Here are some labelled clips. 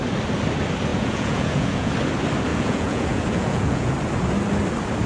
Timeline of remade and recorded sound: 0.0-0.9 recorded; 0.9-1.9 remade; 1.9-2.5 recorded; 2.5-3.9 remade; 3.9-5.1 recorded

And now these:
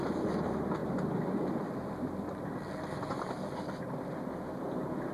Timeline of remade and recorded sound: 0.0-5.1 recorded